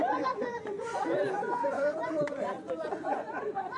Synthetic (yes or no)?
yes